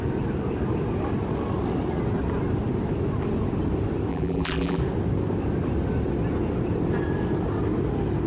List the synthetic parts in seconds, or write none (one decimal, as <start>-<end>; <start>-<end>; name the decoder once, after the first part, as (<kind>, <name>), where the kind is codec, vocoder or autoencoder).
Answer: 4.1-4.8 (vocoder, BigVGAN v2)